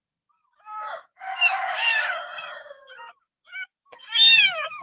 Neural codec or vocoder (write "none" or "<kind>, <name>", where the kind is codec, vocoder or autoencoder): codec, DAC